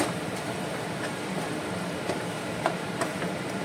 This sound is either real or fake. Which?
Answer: fake